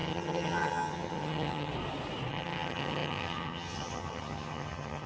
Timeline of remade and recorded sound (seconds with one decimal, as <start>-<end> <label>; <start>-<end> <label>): 0.0-1.7 remade; 1.7-2.3 recorded; 2.3-5.1 remade